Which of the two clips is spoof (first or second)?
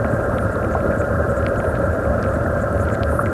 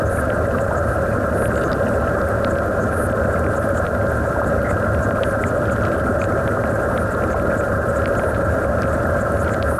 first